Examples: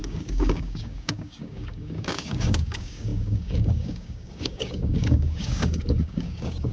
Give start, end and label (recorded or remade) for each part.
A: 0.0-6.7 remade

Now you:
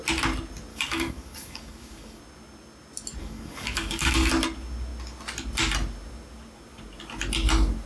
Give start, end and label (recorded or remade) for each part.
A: 0.0-0.7 recorded; 0.7-2.2 remade; 2.2-3.2 recorded; 3.2-4.3 remade; 4.3-7.9 recorded